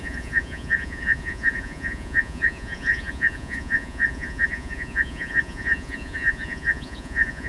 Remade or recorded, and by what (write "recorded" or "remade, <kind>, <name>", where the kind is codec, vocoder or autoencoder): remade, vocoder, Vocos